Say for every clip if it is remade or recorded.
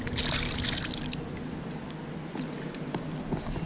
recorded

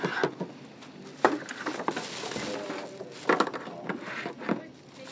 recorded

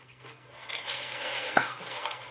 remade